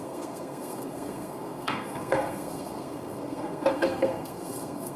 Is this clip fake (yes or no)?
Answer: yes